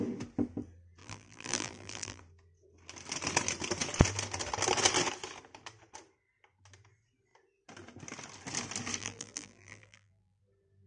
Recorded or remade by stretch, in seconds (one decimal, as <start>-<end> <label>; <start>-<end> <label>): 0.0-1.0 recorded; 1.0-2.2 remade; 2.2-9.0 recorded; 9.0-10.4 remade; 10.4-10.9 recorded